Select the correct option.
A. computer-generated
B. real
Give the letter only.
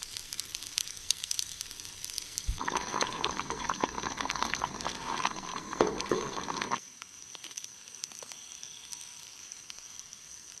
A